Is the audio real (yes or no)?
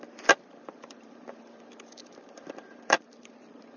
no